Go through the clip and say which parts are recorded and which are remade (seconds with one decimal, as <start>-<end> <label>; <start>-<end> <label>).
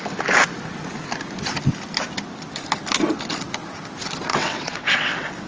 0.0-4.3 recorded; 4.3-5.5 remade